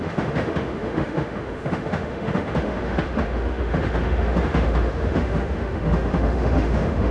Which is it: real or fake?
fake